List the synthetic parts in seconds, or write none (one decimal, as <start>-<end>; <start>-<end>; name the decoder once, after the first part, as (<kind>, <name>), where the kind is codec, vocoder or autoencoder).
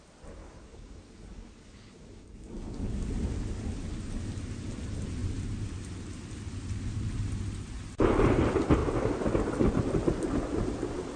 0.4-3.1 (codec, DAC)